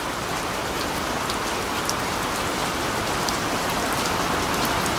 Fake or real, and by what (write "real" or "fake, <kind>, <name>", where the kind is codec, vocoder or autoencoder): real